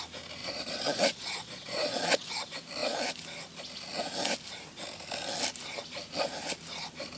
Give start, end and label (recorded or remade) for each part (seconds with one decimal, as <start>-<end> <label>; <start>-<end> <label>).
0.0-0.4 recorded; 0.4-2.3 remade; 2.3-7.2 recorded